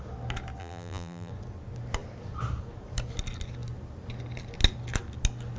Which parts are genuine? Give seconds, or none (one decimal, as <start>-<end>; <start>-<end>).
0.0-0.6; 1.3-5.6